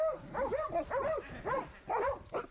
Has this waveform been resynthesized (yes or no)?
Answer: no